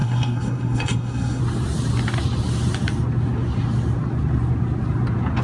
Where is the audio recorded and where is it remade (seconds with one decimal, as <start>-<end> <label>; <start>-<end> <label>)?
0.0-1.4 remade; 1.4-5.4 recorded